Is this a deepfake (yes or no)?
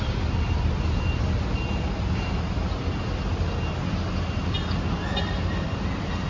no